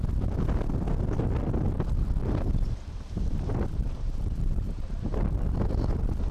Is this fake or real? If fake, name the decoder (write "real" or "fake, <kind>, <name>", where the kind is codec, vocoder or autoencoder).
real